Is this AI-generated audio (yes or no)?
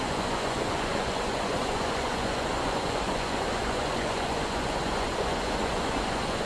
yes